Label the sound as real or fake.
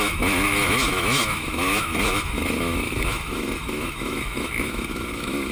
fake